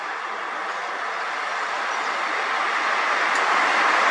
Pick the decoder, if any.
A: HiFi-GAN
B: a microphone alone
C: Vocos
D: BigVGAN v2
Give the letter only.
B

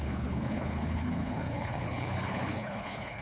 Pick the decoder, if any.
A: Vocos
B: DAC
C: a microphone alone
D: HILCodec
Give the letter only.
D